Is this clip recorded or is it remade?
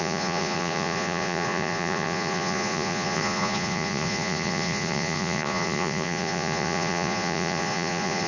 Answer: remade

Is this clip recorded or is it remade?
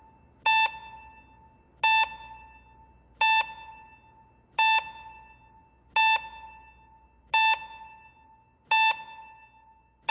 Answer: recorded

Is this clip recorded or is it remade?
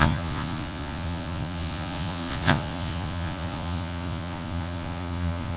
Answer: remade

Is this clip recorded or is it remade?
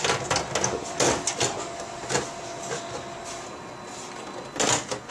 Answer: recorded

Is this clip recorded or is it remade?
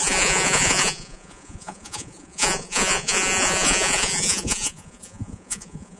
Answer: remade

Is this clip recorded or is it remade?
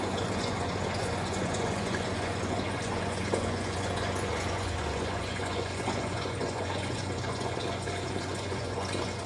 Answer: remade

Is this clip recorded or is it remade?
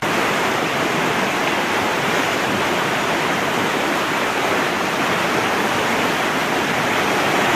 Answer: recorded